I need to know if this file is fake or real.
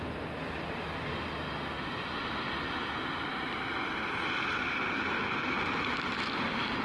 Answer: real